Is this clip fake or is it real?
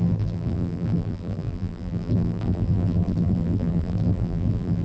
fake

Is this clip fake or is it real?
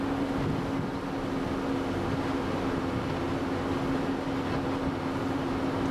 real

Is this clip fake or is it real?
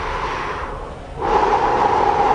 fake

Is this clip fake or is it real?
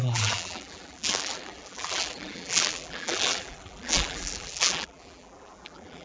fake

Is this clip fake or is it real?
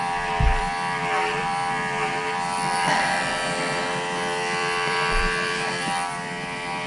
fake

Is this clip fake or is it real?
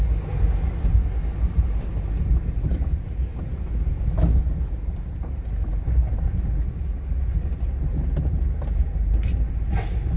real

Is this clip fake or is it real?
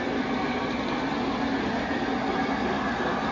real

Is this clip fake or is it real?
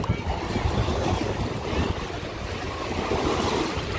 real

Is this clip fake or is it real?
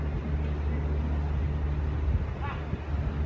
real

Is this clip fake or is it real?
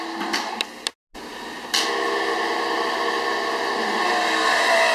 real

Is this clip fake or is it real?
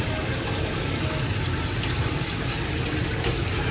real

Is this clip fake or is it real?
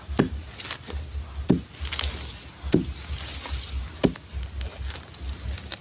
real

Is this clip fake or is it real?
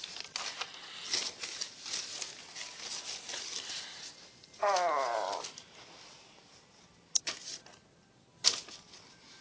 real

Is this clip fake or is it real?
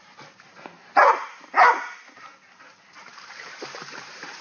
fake